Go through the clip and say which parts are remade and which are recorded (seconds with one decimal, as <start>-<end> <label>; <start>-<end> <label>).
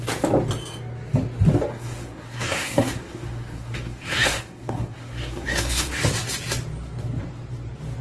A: 0.0-1.7 recorded; 1.7-6.0 remade; 6.0-8.0 recorded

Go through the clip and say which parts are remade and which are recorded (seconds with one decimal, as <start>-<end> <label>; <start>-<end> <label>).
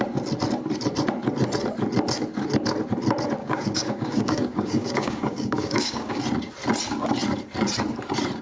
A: 0.0-3.4 recorded; 3.4-6.2 remade; 6.2-8.4 recorded